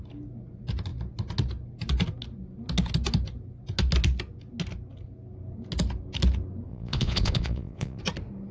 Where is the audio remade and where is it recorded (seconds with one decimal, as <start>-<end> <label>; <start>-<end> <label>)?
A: 0.0-6.7 recorded; 6.7-8.0 remade; 8.0-8.5 recorded